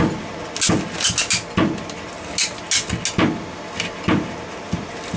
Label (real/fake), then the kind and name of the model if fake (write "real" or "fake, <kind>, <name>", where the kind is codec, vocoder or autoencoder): real